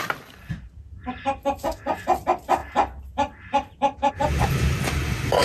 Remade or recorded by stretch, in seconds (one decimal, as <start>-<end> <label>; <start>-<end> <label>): 0.0-5.4 recorded